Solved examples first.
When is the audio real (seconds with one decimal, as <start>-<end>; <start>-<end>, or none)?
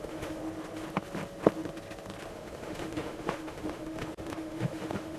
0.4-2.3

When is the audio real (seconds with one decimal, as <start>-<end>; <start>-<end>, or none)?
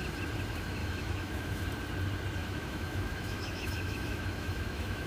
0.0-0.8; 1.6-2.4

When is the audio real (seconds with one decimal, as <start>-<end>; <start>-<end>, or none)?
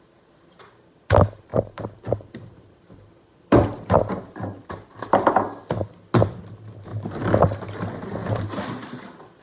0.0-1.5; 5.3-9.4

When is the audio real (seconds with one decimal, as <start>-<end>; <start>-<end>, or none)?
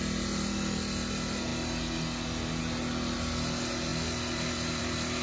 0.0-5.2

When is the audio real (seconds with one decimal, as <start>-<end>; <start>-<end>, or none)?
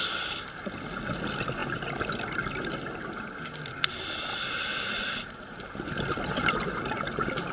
0.0-7.5